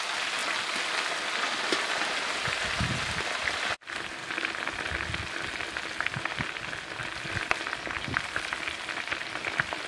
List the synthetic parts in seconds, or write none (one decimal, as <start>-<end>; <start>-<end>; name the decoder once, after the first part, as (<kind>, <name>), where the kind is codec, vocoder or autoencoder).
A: none